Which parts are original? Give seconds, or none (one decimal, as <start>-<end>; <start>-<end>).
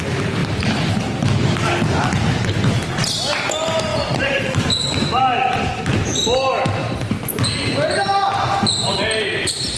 0.0-9.8